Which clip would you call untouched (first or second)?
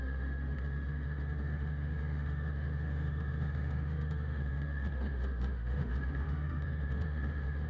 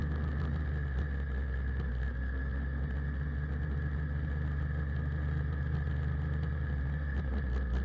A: second